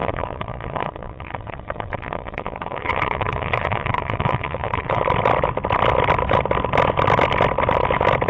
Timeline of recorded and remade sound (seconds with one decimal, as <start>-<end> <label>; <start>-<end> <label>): 0.0-5.0 remade; 5.0-8.3 recorded